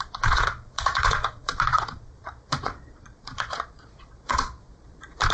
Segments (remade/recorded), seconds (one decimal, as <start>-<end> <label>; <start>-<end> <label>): 0.0-5.3 remade